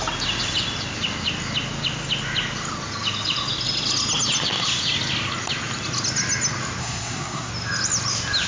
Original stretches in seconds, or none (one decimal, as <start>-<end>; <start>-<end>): 0.0-6.8; 7.5-8.5